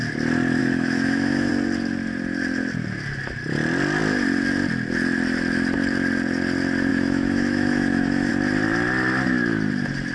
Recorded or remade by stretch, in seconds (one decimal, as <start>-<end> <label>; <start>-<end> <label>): 0.0-0.6 recorded; 0.6-1.5 remade; 1.5-6.9 recorded; 6.9-8.3 remade; 8.3-10.1 recorded

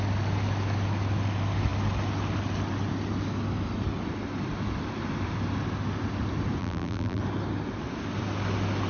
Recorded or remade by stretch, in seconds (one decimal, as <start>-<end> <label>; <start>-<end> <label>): 0.0-6.6 recorded; 6.6-7.2 remade; 7.2-8.9 recorded

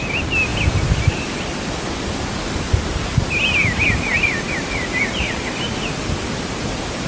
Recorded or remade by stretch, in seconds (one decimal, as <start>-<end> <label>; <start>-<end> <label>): 0.0-0.5 recorded; 0.5-2.4 remade; 2.4-4.1 recorded; 4.1-7.1 remade

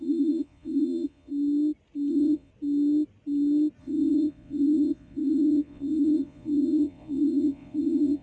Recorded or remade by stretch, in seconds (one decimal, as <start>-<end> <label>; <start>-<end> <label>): 0.0-1.3 remade; 1.3-2.1 recorded; 2.1-2.5 remade; 2.5-3.8 recorded; 3.8-8.2 remade

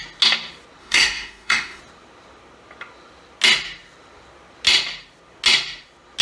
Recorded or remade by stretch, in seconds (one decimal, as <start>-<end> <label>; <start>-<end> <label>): 0.0-0.8 recorded; 0.8-1.8 remade; 1.8-6.2 recorded

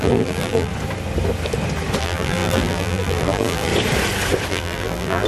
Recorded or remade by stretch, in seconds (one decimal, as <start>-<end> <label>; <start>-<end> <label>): 0.0-0.7 remade; 0.7-2.0 recorded; 2.0-3.7 remade; 3.7-4.5 recorded; 4.5-5.3 remade